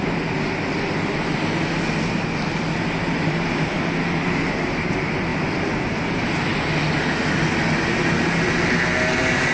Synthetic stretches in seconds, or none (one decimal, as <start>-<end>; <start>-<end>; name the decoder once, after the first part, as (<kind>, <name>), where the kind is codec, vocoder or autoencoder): none